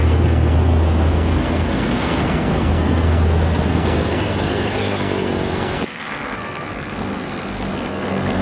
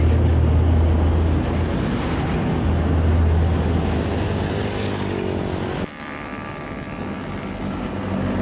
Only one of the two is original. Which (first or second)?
second